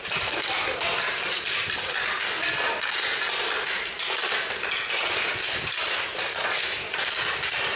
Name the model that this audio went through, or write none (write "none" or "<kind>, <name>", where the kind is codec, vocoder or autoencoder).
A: none